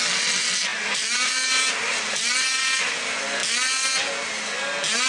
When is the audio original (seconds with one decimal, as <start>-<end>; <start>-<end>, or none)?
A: 0.0-0.7; 2.6-5.1